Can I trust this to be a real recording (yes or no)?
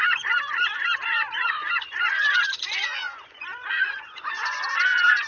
no